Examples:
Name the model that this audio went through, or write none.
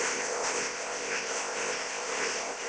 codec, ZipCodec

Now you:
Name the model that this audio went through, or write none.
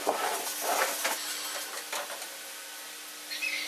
none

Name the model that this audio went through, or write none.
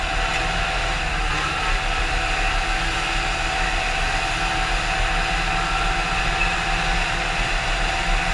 none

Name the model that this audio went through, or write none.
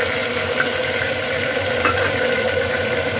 none